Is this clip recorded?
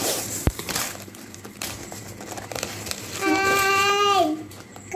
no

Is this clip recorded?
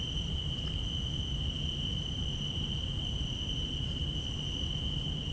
yes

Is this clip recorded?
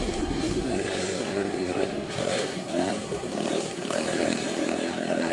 no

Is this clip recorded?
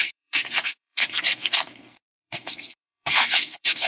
no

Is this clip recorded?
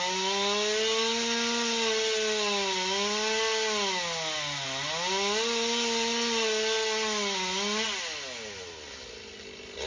yes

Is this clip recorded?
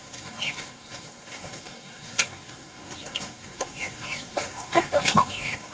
no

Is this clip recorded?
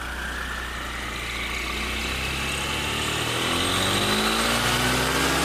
yes